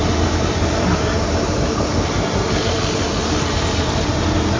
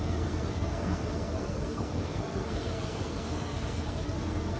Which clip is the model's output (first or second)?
second